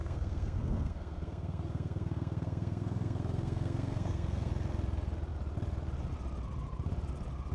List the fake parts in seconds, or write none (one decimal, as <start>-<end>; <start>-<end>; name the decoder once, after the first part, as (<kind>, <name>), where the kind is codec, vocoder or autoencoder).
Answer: 0.0-4.5 (codec, SNAC)